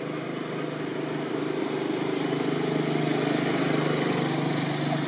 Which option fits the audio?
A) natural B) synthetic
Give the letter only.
A